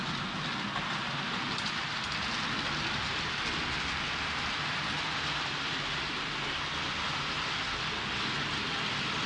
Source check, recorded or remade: recorded